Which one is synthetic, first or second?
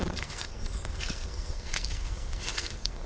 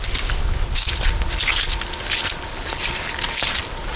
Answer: first